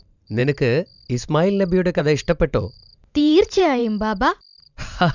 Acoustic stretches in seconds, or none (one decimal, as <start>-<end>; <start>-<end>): 0.4-2.0; 3.8-4.6